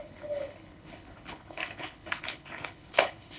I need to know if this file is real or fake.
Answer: fake